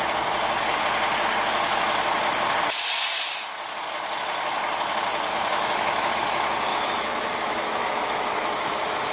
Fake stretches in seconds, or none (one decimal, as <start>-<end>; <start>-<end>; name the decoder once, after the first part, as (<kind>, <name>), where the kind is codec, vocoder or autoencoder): 5.3-6.1 (autoencoder, DAC-VAE); 6.7-9.1